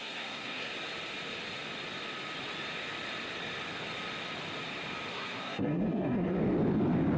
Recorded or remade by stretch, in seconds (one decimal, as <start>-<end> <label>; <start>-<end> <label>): 0.0-0.7 remade; 0.7-5.1 recorded; 5.1-6.4 remade; 6.4-7.2 recorded